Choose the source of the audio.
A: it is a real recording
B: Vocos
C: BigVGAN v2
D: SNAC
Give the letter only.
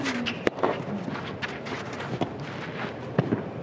A